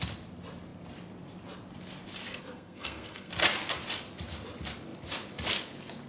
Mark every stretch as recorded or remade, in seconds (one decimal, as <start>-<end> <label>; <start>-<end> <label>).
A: 0.0-2.4 recorded; 2.4-3.3 remade; 3.3-6.1 recorded

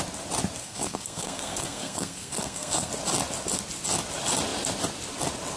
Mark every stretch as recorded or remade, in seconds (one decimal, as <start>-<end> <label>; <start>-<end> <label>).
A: 0.0-0.6 recorded; 0.6-2.9 remade; 2.9-5.6 recorded

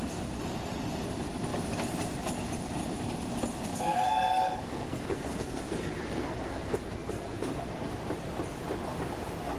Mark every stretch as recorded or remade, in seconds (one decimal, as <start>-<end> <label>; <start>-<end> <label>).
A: 0.0-3.7 recorded; 3.7-7.9 remade; 7.9-9.6 recorded

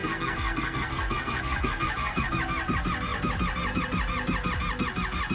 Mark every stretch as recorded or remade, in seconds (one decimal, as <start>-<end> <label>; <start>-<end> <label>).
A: 0.0-2.3 remade; 2.3-5.3 recorded